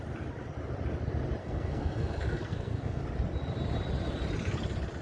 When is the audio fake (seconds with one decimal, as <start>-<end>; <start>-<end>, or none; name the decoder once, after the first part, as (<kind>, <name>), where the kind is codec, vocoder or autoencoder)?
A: 1.4-3.0 (codec, SNAC)